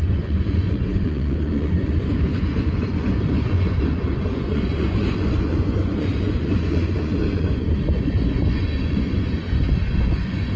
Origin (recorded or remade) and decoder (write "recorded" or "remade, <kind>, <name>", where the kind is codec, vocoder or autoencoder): remade, vocoder, Vocos